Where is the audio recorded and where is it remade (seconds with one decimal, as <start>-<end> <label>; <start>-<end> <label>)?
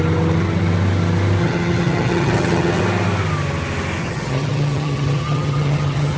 0.0-1.4 recorded; 1.4-2.8 remade; 2.8-4.0 recorded; 4.0-6.2 remade